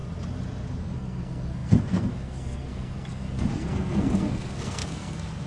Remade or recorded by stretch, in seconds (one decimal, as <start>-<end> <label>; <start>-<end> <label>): 0.0-0.8 recorded; 0.8-5.5 remade